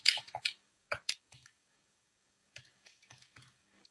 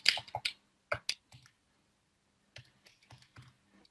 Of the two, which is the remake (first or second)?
first